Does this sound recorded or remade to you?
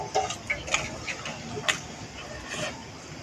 recorded